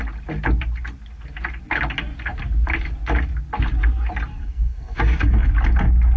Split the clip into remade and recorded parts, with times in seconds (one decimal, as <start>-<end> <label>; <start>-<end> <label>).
0.0-4.3 recorded; 4.3-5.5 remade; 5.5-6.2 recorded